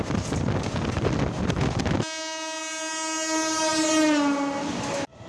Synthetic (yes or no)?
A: no